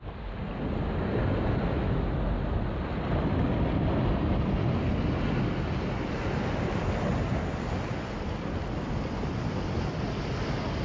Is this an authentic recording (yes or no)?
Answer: yes